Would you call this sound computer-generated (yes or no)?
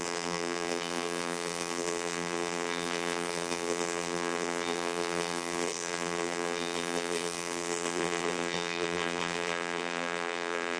yes